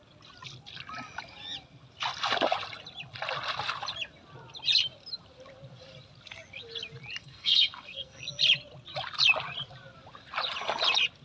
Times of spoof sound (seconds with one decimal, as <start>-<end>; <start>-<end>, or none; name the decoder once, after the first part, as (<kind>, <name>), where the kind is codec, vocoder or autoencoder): 7.2-8.2 (codec, SNAC)